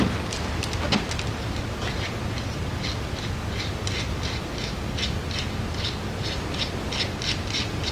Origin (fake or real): real